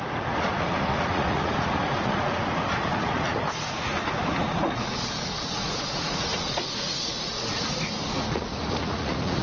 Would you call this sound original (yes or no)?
no